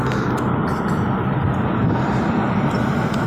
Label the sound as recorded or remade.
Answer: recorded